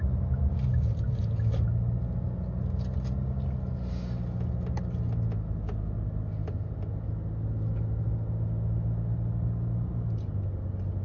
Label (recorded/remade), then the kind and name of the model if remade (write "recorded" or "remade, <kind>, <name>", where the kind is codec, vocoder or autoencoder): recorded